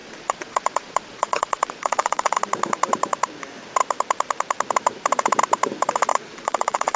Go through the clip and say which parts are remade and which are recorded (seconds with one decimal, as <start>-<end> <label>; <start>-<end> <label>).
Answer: 0.0-2.4 remade; 2.4-6.1 recorded; 6.1-7.0 remade